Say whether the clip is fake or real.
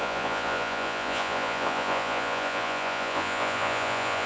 fake